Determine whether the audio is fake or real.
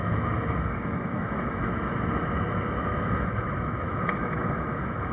fake